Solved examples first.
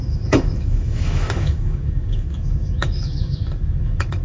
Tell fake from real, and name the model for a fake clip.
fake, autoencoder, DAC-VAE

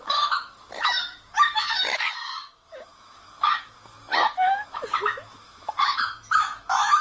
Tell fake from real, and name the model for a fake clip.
fake, autoencoder, DAC-VAE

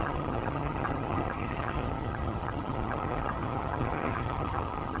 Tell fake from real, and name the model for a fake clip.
fake, vocoder, HiFi-GAN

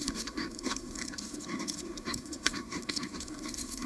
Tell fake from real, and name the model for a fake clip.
fake, codec, SNAC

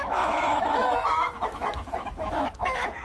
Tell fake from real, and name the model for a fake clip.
fake, autoencoder, DAC-VAE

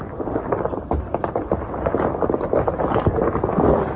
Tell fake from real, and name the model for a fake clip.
real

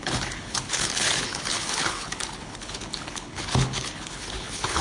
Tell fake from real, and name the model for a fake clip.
fake, codec, HILCodec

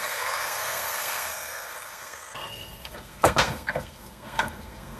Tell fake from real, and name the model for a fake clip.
fake, codec, SNAC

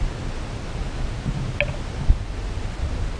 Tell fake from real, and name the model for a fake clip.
real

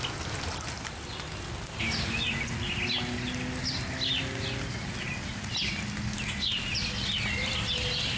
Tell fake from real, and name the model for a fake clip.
real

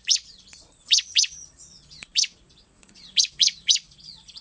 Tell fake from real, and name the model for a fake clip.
fake, vocoder, Vocos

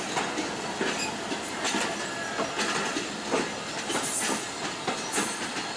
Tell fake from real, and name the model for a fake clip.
real